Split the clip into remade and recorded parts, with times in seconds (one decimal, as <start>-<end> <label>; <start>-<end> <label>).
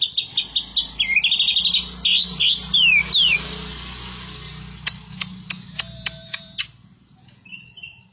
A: 0.0-8.1 recorded